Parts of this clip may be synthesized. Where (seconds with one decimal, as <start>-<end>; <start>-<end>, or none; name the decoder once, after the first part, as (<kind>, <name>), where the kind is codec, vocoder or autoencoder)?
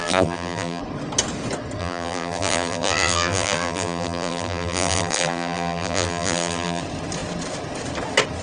0.0-0.8 (vocoder, BigVGAN v2); 1.8-6.8